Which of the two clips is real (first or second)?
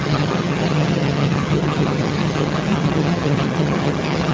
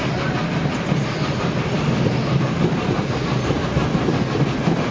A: second